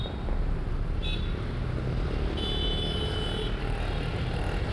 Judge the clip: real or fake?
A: real